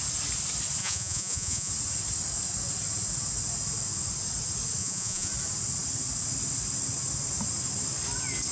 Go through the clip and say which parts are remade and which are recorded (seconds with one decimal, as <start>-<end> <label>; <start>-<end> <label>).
0.0-0.8 recorded; 0.8-1.7 remade; 1.7-4.8 recorded; 4.8-5.3 remade; 5.3-8.5 recorded